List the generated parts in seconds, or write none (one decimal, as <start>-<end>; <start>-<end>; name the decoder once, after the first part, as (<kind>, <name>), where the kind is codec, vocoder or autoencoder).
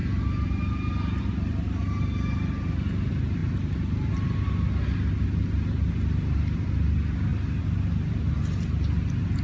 none